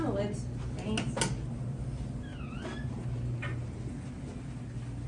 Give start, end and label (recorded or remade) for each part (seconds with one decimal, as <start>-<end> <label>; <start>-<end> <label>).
0.0-5.1 recorded